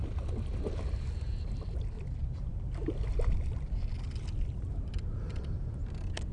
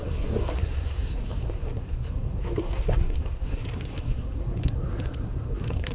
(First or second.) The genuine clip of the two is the first